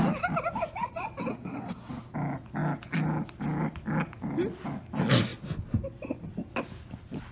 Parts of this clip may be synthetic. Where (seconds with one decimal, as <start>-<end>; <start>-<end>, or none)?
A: 1.3-1.9